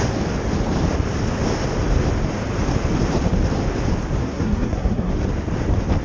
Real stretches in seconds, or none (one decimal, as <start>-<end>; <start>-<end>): 0.0-4.2; 5.1-6.0